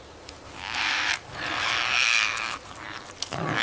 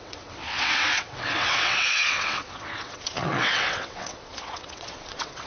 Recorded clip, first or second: first